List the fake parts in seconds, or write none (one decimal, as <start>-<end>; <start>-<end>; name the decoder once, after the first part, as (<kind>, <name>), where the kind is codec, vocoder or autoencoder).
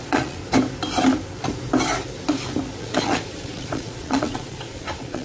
0.0-0.4 (vocoder, Vocos); 2.8-5.2